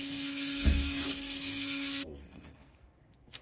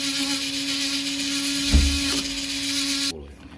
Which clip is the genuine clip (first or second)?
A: second